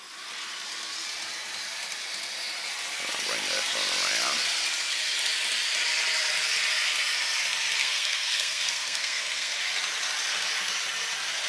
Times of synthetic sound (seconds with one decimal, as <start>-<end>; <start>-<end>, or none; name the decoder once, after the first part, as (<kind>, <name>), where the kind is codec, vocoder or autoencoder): 7.8-9.5 (codec, SNAC)